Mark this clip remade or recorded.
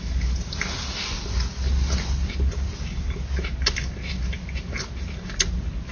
recorded